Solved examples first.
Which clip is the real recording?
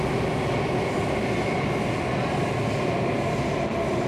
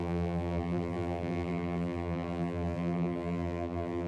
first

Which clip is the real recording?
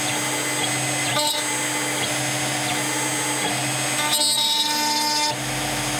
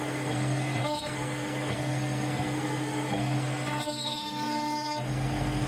first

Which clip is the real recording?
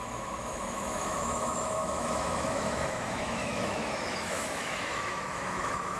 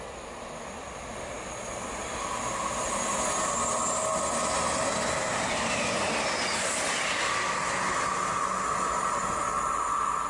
second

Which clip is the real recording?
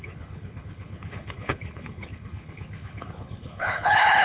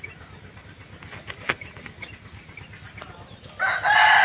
second